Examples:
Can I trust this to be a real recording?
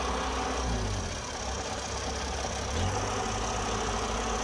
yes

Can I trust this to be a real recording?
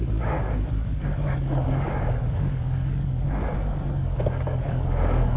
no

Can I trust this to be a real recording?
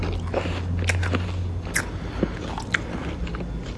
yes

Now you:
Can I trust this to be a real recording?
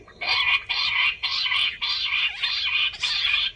yes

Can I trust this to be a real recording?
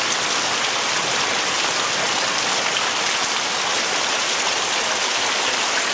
yes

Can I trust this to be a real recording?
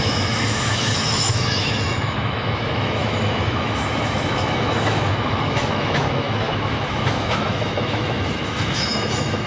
no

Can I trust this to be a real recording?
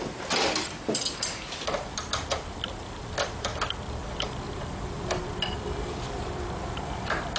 no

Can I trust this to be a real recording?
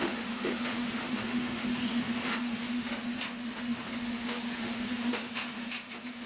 no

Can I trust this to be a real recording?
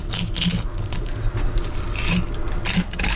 yes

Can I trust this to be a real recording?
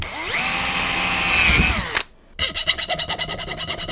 yes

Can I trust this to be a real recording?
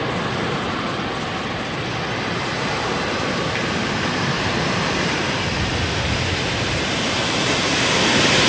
yes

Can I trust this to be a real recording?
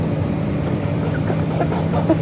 no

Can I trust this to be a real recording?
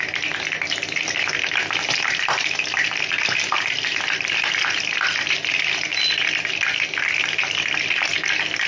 yes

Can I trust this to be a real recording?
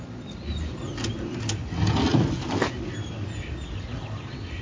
yes